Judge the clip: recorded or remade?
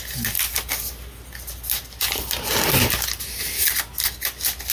recorded